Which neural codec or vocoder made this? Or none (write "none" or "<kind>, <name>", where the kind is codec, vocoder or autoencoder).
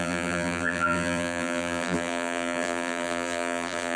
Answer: vocoder, BigVGAN v2